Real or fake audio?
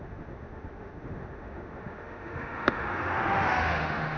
fake